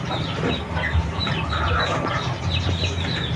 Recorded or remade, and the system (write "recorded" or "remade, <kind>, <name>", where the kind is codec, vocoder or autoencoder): recorded